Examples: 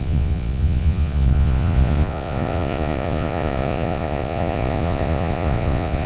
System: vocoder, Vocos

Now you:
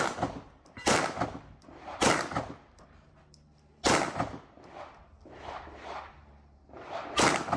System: none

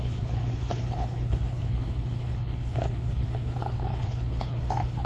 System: codec, HILCodec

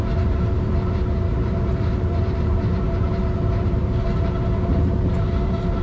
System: vocoder, BigVGAN v2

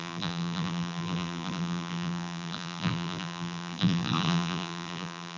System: vocoder, BigVGAN v2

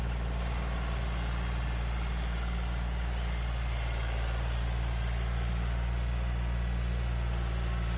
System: none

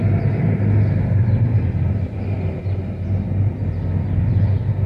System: none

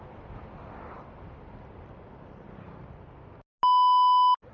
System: none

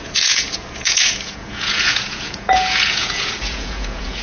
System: vocoder, Vocos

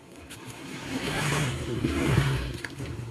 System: codec, SNAC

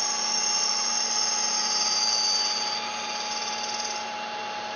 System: none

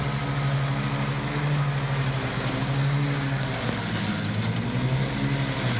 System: none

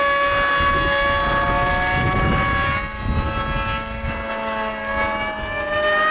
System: none